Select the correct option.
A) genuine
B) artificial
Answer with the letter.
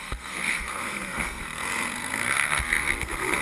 B